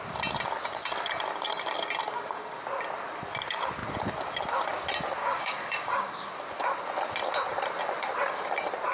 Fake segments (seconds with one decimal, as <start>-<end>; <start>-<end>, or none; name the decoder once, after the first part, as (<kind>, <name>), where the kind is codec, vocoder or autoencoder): 2.0-2.6 (codec, DAC); 5.2-6.3